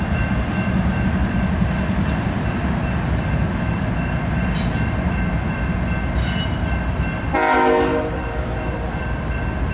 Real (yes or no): yes